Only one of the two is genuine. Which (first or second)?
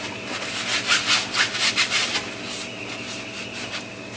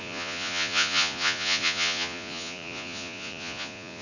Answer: first